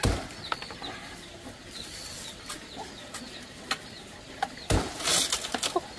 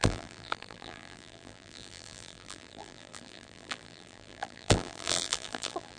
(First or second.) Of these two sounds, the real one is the first